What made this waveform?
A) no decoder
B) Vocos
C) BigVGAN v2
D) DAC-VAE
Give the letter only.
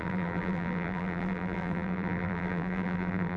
C